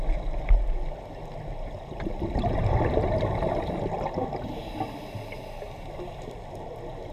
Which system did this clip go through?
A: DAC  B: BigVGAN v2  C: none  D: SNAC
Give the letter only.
C